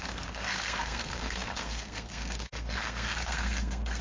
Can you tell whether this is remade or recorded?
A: remade